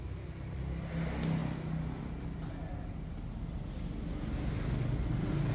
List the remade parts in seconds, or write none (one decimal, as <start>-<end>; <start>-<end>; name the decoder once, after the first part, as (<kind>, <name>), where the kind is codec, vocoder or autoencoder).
none